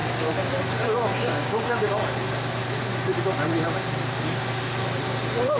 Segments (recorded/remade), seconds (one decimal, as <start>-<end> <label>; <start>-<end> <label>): 0.0-1.1 recorded; 1.1-1.9 remade; 1.9-5.6 recorded